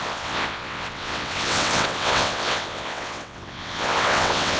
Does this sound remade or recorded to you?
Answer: remade